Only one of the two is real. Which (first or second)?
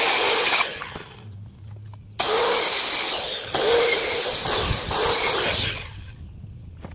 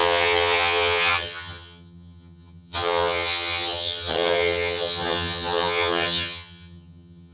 first